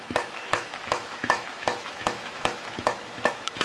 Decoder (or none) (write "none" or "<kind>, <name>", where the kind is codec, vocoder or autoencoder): autoencoder, DAC-VAE